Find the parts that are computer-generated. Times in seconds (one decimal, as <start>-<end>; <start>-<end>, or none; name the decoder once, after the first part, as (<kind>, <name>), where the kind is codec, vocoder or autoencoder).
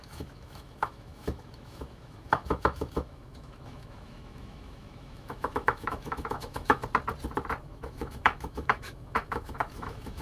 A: 0.0-6.8 (autoencoder, DAC-VAE); 7.6-10.2